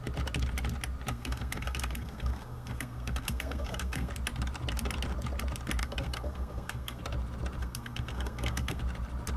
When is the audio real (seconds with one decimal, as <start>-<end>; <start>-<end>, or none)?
0.0-1.1; 4.1-5.8; 7.0-7.6; 8.8-9.4